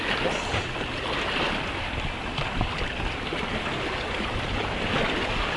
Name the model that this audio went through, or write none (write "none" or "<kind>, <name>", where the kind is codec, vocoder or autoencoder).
none